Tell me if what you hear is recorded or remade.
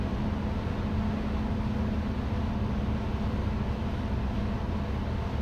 recorded